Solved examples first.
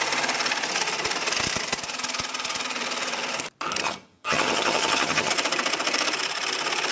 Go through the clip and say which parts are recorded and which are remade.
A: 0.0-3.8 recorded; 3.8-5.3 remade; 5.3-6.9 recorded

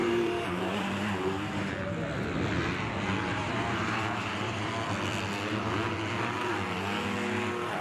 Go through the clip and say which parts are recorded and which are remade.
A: 0.0-1.7 remade; 1.7-3.3 recorded; 3.3-4.7 remade; 4.7-7.8 recorded

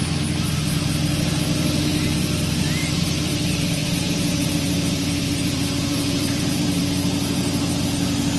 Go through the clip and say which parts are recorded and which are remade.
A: 0.0-2.8 recorded; 2.8-3.3 remade; 3.3-3.8 recorded; 3.8-6.8 remade; 6.8-8.4 recorded